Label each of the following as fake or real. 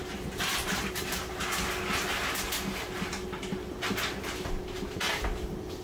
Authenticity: real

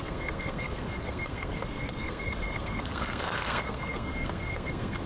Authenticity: fake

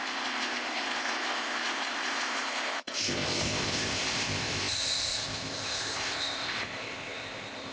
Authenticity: fake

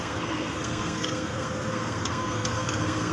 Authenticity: fake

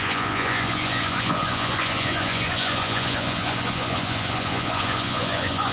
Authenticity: fake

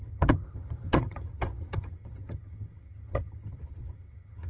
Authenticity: fake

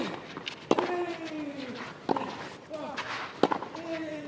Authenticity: real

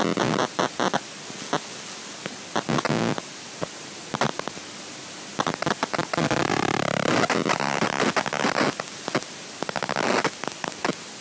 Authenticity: real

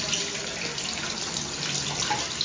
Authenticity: real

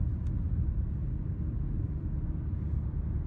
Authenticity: real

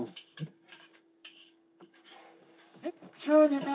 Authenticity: fake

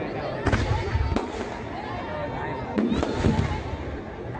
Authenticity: real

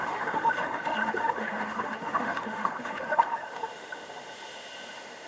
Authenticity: fake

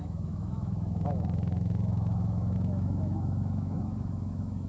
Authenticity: fake